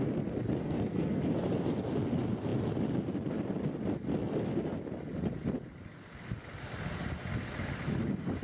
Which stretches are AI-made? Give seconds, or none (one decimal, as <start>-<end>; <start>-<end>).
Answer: 0.6-1.2